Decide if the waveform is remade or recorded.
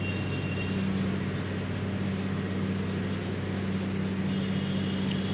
recorded